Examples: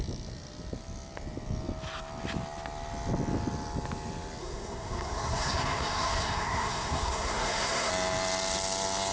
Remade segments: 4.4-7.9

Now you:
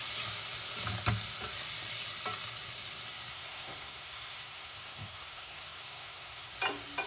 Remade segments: 3.3-6.5

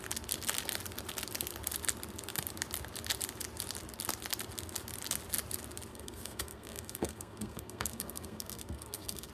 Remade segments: 5.9-9.3

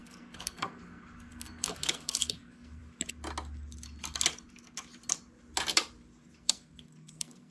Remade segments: 0.0-2.8; 6.4-7.5